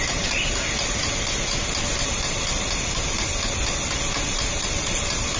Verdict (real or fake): real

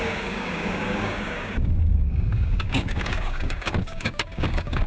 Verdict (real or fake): fake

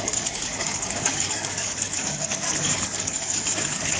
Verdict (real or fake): fake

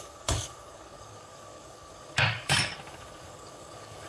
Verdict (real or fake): fake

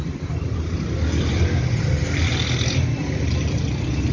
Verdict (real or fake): real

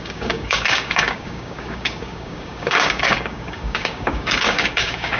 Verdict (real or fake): fake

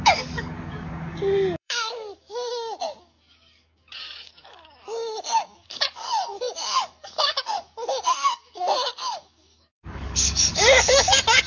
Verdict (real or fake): fake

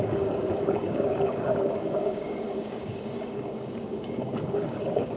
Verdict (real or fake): fake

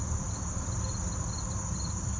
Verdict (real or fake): real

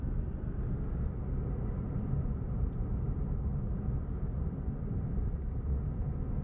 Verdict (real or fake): real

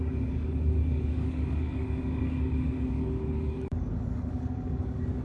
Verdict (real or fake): fake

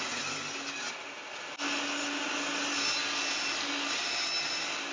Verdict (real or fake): real